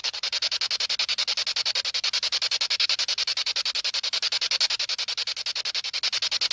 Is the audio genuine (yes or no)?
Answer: yes